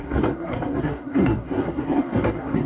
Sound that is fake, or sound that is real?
fake